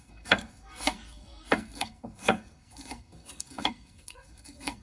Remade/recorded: remade